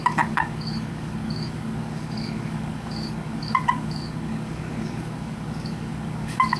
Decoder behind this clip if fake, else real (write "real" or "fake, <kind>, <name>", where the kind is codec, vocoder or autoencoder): fake, codec, DAC